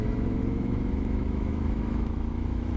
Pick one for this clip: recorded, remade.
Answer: remade